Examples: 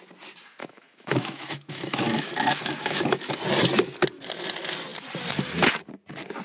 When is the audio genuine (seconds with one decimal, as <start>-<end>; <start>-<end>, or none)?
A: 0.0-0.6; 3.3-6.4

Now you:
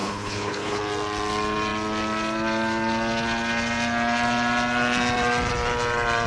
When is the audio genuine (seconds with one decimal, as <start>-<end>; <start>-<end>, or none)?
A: 0.8-6.3

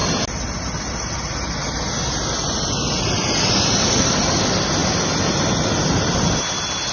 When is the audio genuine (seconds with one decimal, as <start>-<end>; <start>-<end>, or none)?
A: 0.0-6.9

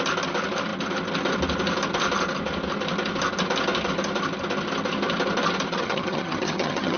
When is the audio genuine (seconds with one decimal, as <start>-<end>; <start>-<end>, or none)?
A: 0.0-5.7